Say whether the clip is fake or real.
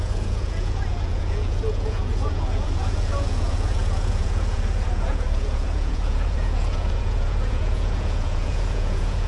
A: fake